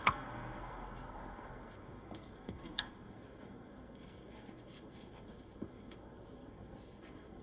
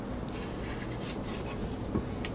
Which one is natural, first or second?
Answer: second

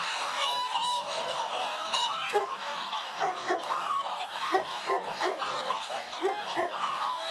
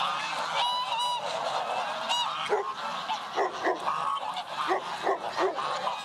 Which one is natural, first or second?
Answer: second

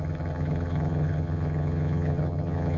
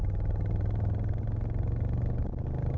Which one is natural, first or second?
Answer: second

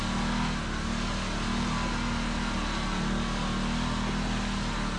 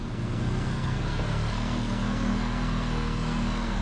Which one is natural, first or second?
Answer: first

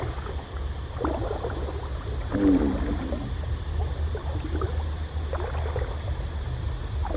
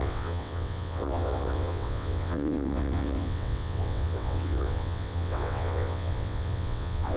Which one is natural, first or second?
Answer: first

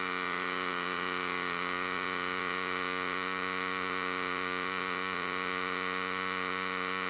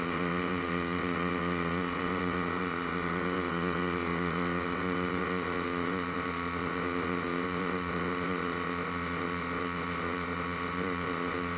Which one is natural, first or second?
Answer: first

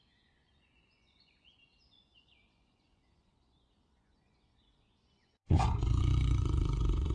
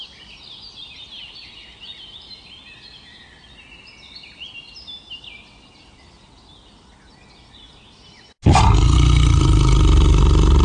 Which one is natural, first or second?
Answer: second